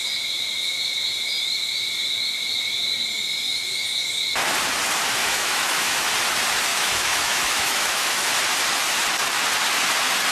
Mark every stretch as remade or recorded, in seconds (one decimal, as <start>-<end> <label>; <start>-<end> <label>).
0.0-5.2 recorded; 5.2-6.1 remade; 6.1-6.7 recorded; 6.7-8.3 remade; 8.3-10.3 recorded

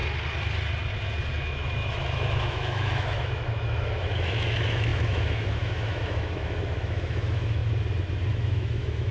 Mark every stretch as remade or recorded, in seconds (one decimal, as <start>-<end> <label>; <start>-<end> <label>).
0.0-1.3 recorded; 1.3-7.6 remade; 7.6-8.3 recorded; 8.3-9.1 remade